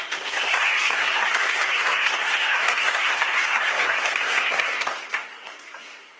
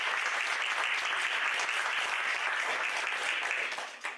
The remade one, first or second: first